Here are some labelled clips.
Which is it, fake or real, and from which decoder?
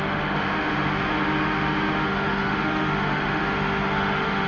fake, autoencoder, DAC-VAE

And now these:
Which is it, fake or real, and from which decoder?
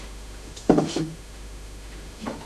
fake, autoencoder, DAC-VAE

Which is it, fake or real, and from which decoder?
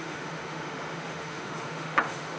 fake, autoencoder, DAC-VAE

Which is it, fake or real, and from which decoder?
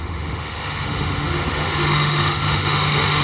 fake, autoencoder, DAC-VAE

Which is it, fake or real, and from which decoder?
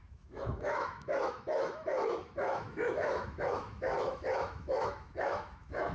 fake, autoencoder, DAC-VAE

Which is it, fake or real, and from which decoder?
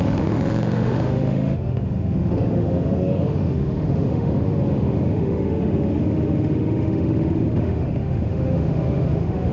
fake, autoencoder, DAC-VAE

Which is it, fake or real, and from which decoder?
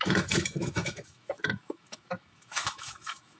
fake, autoencoder, DAC-VAE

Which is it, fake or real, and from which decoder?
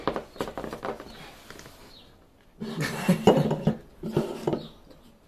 real